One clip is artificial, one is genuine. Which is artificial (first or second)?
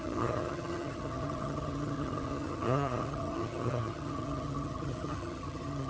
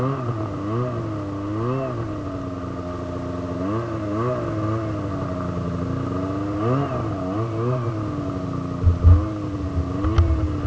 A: first